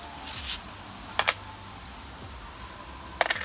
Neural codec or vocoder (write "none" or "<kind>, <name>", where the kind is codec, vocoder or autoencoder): none